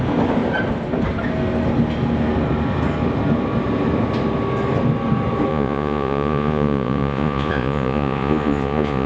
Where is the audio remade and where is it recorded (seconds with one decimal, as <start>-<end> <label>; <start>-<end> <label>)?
0.0-5.5 recorded; 5.5-9.1 remade